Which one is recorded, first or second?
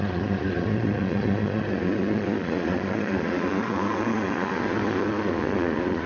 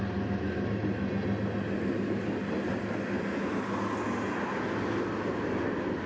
second